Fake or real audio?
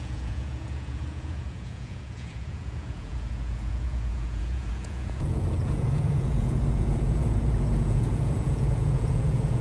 fake